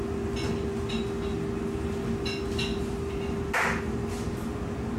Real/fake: real